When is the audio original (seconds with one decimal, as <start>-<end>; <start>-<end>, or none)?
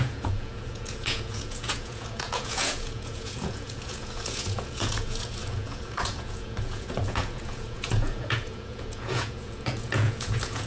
none